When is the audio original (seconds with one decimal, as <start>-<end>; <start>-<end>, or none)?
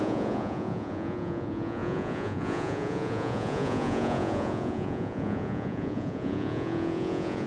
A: none